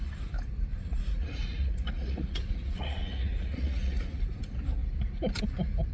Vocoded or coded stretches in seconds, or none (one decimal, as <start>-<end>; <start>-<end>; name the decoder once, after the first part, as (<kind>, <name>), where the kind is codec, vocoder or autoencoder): 0.7-4.2 (vocoder, Vocos)